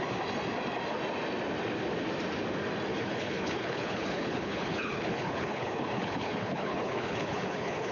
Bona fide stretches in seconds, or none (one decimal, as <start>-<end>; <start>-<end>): 0.0-2.9